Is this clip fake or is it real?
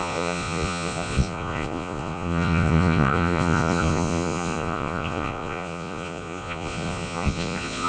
fake